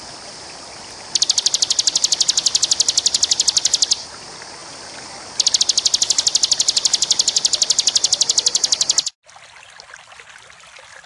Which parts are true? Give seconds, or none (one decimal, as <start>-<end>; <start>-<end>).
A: 0.0-11.1